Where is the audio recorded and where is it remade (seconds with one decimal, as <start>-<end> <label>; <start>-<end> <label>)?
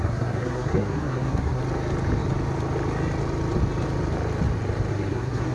0.0-1.6 remade; 1.6-4.9 recorded; 4.9-5.5 remade